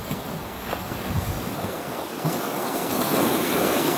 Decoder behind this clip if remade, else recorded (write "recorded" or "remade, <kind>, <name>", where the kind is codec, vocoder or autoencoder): remade, codec, SNAC